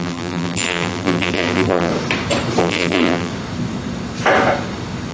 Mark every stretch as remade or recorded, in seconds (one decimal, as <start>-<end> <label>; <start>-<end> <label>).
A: 0.0-1.9 remade; 1.9-2.6 recorded; 2.6-3.3 remade; 3.3-5.1 recorded